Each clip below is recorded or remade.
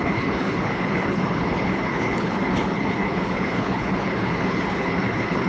remade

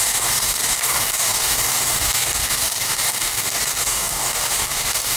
remade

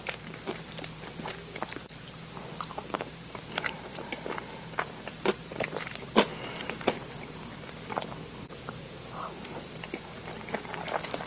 remade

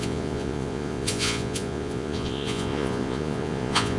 remade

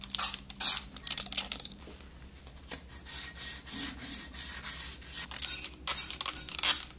recorded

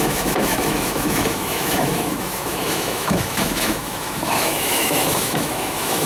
remade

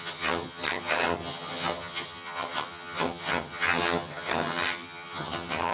remade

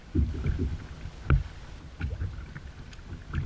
recorded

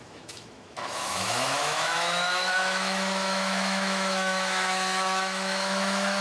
remade